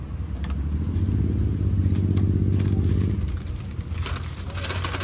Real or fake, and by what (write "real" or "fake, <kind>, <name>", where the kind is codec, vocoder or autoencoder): real